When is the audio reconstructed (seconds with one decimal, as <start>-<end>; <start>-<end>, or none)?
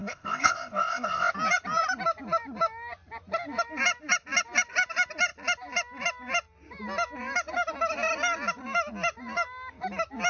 0.0-1.3